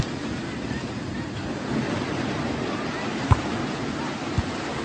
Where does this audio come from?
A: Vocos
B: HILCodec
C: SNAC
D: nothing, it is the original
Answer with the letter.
D